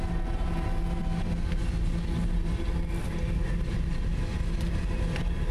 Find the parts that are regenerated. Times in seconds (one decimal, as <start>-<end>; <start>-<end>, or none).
none